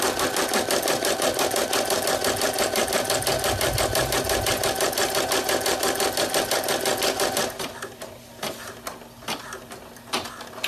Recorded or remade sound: recorded